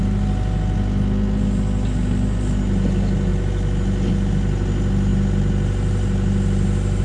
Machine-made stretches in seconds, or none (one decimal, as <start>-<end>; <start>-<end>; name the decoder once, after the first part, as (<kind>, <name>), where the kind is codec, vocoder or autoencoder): none